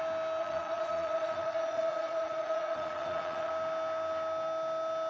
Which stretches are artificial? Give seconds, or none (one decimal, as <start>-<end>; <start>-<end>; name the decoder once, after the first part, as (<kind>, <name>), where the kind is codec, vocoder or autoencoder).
0.4-3.5 (vocoder, Vocos)